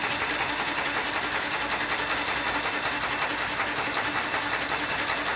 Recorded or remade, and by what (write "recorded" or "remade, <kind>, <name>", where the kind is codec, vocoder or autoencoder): recorded